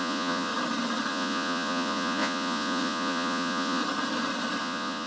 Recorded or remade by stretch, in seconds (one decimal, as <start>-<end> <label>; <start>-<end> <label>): 0.0-0.5 remade; 0.5-1.1 recorded; 1.1-3.8 remade; 3.8-4.6 recorded; 4.6-5.1 remade